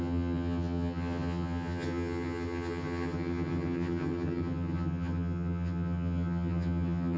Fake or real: fake